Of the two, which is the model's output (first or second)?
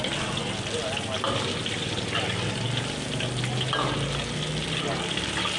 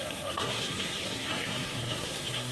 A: second